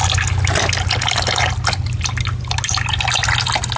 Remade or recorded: recorded